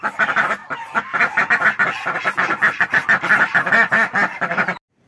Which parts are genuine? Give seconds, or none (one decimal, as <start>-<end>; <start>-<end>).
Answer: 0.0-5.1